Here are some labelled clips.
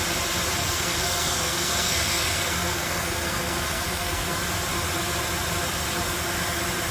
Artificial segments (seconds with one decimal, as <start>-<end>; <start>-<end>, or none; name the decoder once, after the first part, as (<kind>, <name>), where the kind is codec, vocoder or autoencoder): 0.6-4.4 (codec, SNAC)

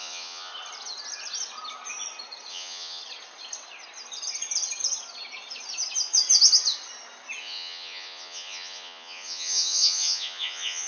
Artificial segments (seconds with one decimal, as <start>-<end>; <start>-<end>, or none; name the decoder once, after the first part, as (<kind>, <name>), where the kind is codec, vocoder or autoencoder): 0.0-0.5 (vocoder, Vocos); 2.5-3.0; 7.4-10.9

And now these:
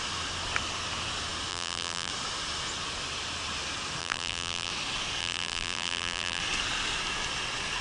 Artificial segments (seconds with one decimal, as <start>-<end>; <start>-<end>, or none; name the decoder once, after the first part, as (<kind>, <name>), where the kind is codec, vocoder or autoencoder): 1.5-2.1 (vocoder, BigVGAN v2); 4.0-4.7; 5.2-6.4

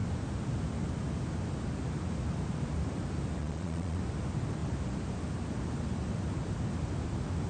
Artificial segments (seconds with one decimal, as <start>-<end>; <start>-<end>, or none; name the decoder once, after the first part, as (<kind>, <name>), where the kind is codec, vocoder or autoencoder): 3.4-4.0 (vocoder, Vocos)

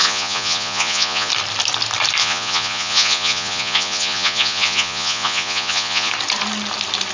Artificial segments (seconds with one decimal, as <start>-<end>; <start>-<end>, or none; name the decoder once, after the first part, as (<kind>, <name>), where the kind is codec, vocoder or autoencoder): 0.0-1.3 (vocoder, Vocos); 2.2-6.1

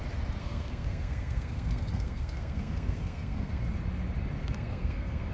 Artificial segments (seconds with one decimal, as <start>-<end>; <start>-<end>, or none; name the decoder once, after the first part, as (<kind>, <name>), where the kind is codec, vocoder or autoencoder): 0.4-3.6 (codec, SNAC); 4.4-5.3